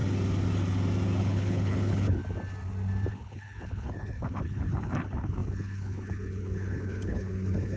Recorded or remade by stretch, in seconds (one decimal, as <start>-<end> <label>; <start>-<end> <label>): 0.0-1.2 recorded; 1.2-2.2 remade; 2.2-3.1 recorded; 3.1-7.8 remade